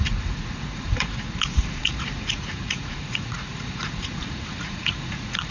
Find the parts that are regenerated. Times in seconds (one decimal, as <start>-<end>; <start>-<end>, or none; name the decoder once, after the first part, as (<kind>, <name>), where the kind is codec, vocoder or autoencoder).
0.0-5.5 (vocoder, Vocos)